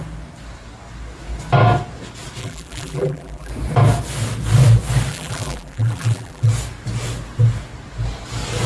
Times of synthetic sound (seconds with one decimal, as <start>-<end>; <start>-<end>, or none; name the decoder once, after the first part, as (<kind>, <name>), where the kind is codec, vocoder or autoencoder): 2.4-3.5 (vocoder, BigVGAN v2); 5.1-6.5